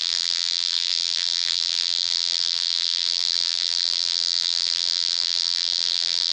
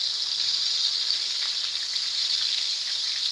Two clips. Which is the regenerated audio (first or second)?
first